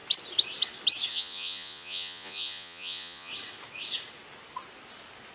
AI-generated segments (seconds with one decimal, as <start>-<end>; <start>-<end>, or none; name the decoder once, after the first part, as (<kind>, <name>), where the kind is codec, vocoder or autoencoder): 1.1-3.3 (vocoder, Vocos)

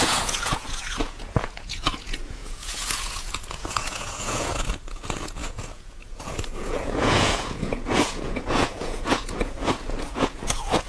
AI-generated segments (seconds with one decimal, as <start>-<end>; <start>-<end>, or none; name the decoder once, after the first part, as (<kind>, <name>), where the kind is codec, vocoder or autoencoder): 0.0-10.9 (vocoder, Vocos)

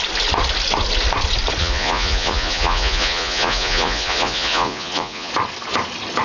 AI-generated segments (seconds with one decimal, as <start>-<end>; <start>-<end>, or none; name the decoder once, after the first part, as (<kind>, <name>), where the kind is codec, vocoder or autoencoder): 1.6-5.3 (vocoder, Vocos)